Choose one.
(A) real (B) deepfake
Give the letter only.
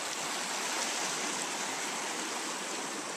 A